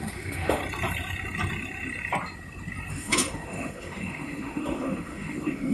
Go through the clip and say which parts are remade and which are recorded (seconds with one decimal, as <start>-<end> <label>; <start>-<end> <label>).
0.0-0.6 remade; 0.6-2.9 recorded; 2.9-5.7 remade